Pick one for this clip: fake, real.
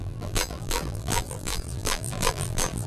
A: fake